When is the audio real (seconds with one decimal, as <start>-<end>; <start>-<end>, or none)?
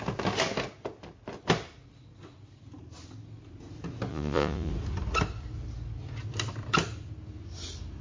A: 0.0-4.1; 4.7-8.0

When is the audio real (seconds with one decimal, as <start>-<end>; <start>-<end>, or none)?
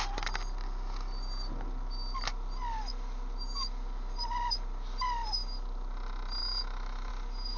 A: 0.0-6.4; 7.1-7.6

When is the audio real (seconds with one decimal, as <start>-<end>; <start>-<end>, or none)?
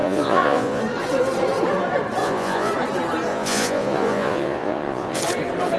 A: 0.8-2.2; 2.7-3.3; 5.2-5.8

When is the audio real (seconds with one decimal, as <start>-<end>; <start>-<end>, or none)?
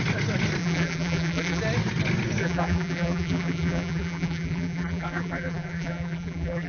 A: 0.0-0.6; 1.6-2.4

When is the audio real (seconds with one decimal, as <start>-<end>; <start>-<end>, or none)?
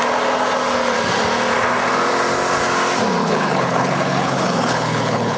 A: 0.0-3.2